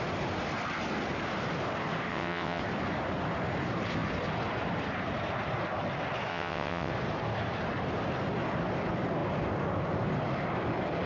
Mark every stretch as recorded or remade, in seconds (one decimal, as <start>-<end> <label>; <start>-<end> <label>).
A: 0.0-2.1 recorded; 2.1-2.6 remade; 2.6-6.3 recorded; 6.3-6.9 remade; 6.9-11.1 recorded